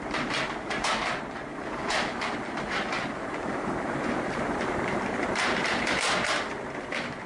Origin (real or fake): fake